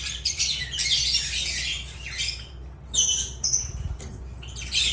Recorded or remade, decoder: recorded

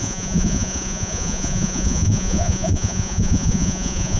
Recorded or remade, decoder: remade, vocoder, Vocos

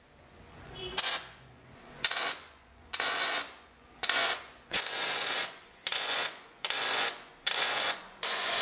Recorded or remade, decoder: remade, vocoder, Vocos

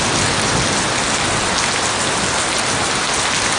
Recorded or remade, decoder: recorded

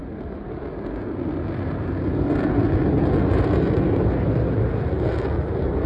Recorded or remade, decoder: recorded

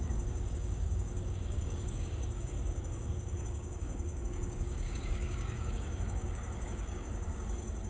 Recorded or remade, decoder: remade, codec, DAC